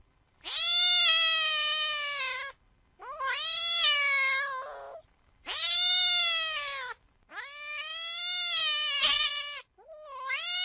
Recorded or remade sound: recorded